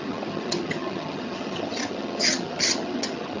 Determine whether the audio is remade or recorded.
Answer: remade